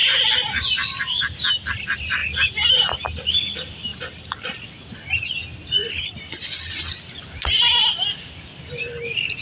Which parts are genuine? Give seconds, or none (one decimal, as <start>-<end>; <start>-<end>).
0.0-9.4